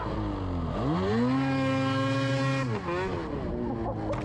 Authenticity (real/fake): real